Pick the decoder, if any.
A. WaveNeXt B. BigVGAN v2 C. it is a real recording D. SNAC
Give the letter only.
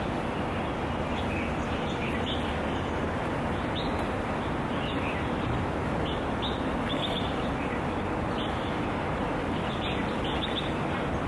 C